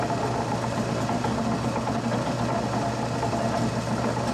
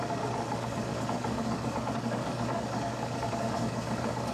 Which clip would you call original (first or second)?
first